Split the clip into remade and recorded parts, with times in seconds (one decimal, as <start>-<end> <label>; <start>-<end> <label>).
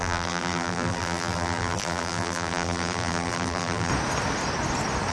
0.0-3.9 remade; 3.9-5.1 recorded